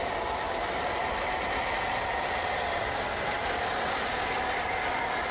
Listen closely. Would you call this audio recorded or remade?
recorded